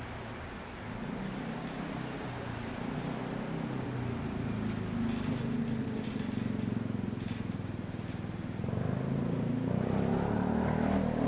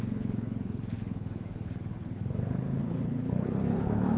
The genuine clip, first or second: first